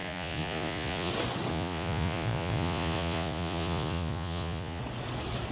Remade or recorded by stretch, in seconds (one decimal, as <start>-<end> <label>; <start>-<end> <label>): 0.0-1.1 remade; 1.1-1.5 recorded; 1.5-4.8 remade; 4.8-5.5 recorded

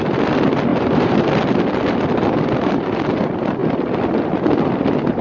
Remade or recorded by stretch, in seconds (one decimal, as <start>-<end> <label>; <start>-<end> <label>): 0.0-0.7 recorded; 0.7-1.3 remade; 1.3-5.2 recorded

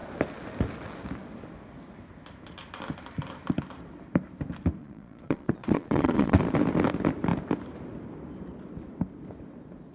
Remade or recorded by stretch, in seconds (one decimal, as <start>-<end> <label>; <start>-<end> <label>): 0.0-4.8 recorded; 4.8-6.4 remade; 6.4-9.9 recorded

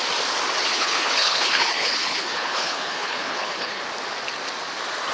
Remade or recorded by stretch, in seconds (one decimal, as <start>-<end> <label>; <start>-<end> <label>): 0.0-0.7 recorded; 0.7-3.8 remade; 3.8-5.1 recorded

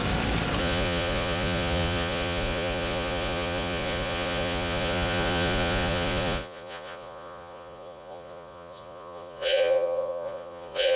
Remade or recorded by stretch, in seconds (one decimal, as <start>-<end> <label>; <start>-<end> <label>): 0.0-0.6 recorded; 0.6-11.0 remade

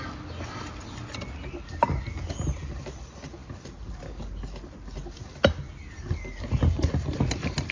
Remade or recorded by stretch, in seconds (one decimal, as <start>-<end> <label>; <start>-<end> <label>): 0.0-7.7 recorded

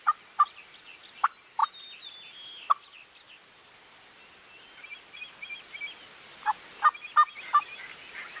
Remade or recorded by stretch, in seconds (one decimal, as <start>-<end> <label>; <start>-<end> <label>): 0.0-8.4 recorded

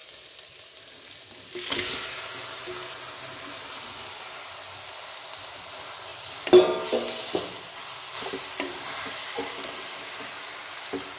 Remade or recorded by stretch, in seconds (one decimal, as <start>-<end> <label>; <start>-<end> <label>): 0.0-11.2 recorded